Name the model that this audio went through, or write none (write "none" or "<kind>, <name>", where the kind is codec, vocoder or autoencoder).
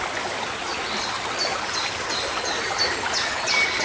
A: none